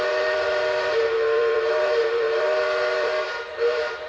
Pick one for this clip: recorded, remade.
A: remade